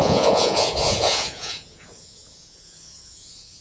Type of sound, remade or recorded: remade